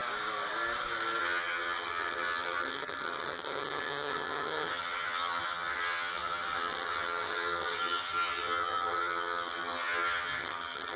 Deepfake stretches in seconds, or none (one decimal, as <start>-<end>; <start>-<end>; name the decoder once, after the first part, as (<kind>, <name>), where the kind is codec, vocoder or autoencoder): 1.2-11.0 (vocoder, HiFi-GAN)